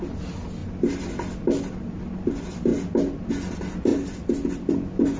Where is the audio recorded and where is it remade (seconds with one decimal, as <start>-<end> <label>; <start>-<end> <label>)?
0.0-5.2 recorded